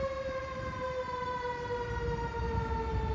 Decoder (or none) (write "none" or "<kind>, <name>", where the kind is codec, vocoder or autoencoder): none